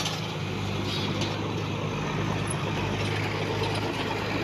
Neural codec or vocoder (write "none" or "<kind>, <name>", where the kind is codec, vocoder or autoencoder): none